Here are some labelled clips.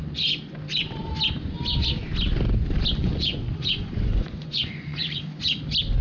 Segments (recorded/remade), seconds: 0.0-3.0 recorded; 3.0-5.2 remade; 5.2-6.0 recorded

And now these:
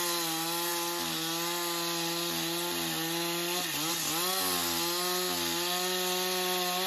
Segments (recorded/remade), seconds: 0.0-6.9 recorded